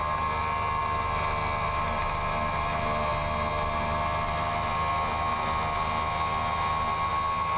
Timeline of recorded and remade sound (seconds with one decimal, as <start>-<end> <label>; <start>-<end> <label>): 0.0-7.6 recorded